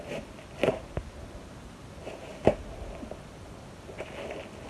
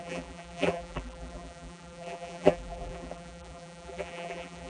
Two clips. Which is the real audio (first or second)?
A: first